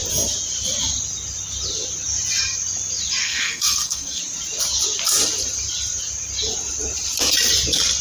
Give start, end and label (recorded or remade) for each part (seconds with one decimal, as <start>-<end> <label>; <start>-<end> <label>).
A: 0.0-3.2 recorded; 3.2-4.2 remade; 4.2-8.0 recorded